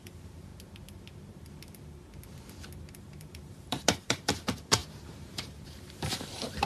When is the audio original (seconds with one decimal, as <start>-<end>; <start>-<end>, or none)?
0.5-2.9